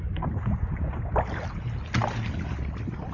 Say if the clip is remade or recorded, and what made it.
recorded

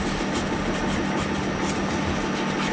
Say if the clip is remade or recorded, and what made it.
recorded